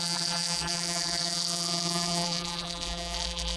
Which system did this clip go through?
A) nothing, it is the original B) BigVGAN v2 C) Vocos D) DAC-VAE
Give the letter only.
B